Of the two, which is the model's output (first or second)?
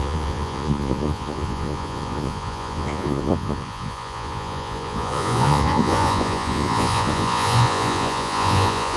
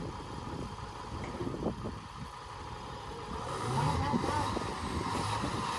first